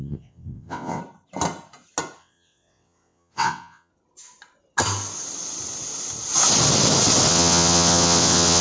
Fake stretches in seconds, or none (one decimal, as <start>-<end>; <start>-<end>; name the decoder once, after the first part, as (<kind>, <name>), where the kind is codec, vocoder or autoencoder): 0.0-1.0 (vocoder, WaveNeXt); 2.2-3.9; 7.3-8.6